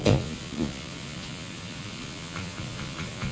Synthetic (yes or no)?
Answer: yes